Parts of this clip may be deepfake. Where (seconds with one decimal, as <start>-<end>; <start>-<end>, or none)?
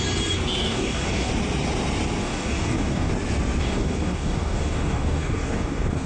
0.6-1.3; 2.2-3.1; 3.6-6.1